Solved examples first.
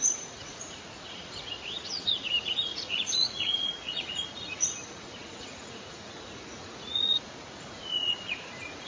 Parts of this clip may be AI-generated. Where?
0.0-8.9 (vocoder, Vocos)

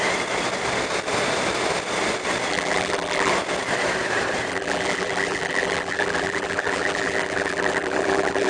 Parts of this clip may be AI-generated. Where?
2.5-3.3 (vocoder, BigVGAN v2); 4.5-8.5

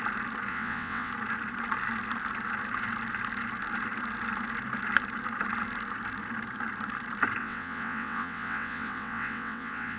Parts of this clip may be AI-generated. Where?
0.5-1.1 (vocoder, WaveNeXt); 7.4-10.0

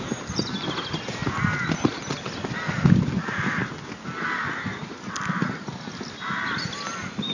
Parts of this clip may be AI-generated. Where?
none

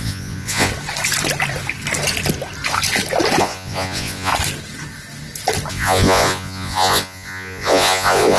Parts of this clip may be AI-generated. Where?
0.0-0.7 (vocoder, Vocos); 3.4-4.3; 5.7-8.4